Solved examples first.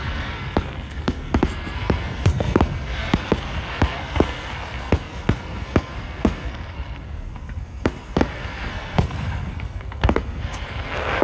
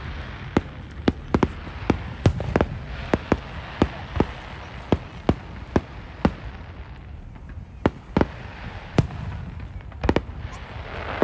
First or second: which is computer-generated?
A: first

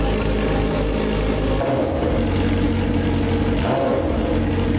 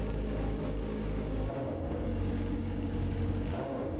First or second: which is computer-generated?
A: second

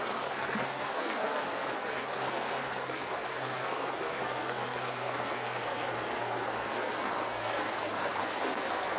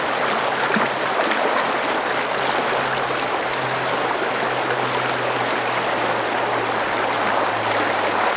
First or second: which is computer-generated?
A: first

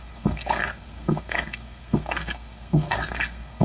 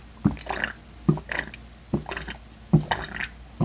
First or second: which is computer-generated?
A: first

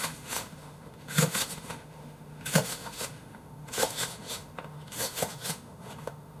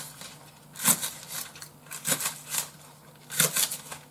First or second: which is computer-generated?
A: first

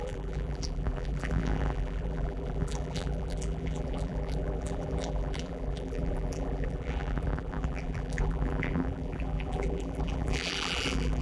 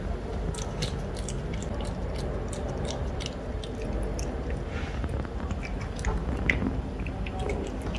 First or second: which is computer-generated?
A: first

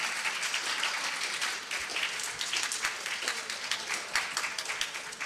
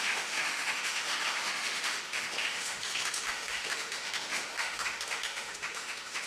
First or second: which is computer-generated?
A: second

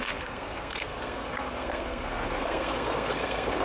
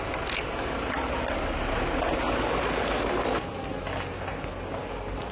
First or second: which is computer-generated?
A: first